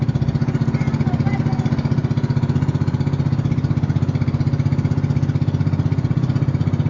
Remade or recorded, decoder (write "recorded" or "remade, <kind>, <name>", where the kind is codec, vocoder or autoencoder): recorded